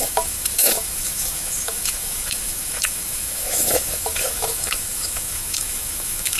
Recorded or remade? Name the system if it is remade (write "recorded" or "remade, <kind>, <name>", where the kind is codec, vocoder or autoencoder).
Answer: remade, autoencoder, DAC-VAE